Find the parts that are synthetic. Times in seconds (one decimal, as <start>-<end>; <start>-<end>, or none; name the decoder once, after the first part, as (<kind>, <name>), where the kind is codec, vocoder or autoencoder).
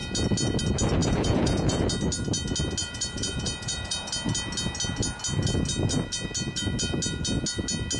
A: 1.0-1.8 (vocoder, Vocos); 2.8-4.1